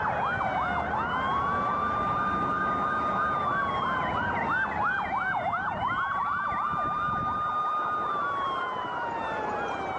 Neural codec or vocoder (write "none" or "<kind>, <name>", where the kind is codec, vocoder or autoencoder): none